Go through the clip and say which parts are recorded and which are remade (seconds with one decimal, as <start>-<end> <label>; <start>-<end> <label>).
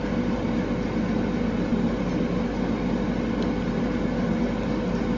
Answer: 0.0-5.2 recorded